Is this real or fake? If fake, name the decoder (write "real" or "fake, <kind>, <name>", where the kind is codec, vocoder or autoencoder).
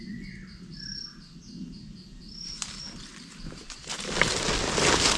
real